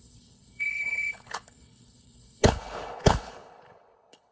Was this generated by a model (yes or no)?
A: yes